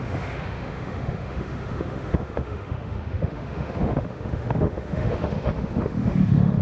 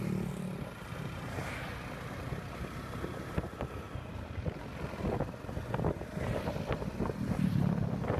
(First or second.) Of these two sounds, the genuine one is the second